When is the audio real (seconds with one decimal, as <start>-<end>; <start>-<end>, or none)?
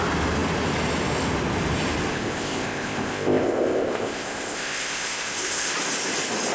0.0-2.1; 5.7-6.5